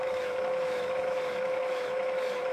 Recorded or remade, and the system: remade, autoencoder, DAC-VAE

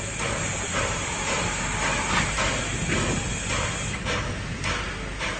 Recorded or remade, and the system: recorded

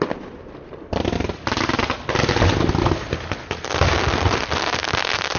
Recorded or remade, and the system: recorded